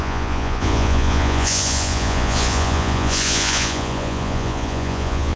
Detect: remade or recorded remade